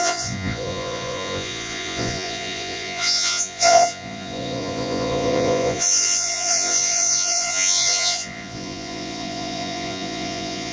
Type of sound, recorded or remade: remade